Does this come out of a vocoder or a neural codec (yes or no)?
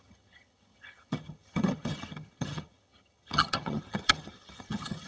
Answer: yes